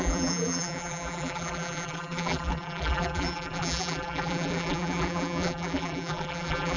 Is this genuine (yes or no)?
no